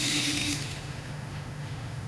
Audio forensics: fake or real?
fake